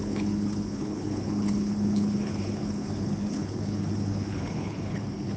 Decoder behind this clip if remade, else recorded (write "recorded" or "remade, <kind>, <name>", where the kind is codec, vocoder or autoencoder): remade, codec, HILCodec